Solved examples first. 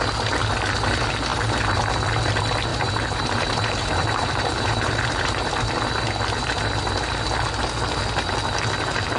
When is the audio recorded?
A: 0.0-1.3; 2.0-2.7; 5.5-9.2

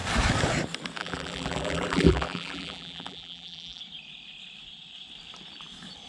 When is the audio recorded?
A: 0.0-1.0; 3.8-6.1

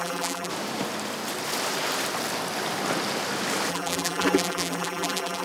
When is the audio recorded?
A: 0.5-3.7

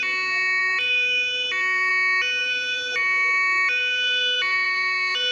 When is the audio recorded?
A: 0.0-0.6; 1.9-2.4